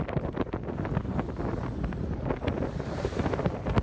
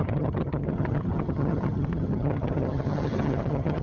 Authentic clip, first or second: first